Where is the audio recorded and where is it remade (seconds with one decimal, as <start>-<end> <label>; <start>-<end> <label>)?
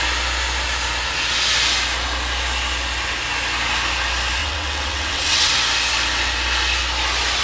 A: 0.0-4.4 recorded; 4.4-5.5 remade; 5.5-7.4 recorded